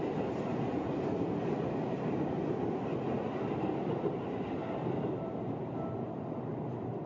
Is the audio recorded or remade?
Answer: recorded